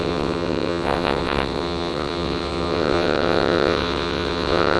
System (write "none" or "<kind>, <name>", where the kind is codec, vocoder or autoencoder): vocoder, WaveNeXt